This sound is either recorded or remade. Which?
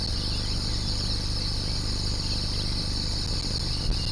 recorded